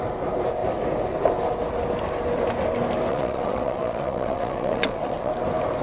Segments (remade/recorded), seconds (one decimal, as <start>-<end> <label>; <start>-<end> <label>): 0.0-3.1 recorded; 3.1-5.3 remade; 5.3-5.8 recorded